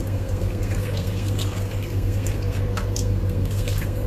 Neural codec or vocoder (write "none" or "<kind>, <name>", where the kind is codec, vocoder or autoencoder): codec, SNAC